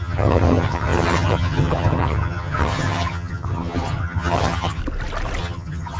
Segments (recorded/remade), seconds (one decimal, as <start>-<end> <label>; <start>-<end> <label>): 0.0-4.8 remade; 4.8-5.4 recorded; 5.4-6.0 remade